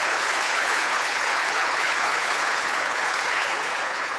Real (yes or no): no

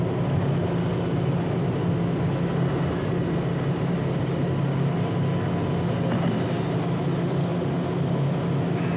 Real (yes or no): yes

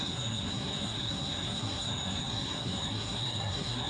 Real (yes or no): no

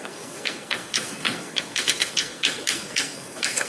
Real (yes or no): no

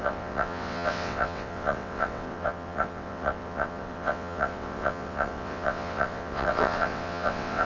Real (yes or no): no